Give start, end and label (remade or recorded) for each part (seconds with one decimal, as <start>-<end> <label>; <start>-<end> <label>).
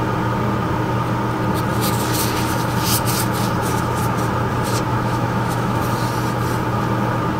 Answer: 0.0-4.9 recorded; 4.9-5.8 remade; 5.8-7.4 recorded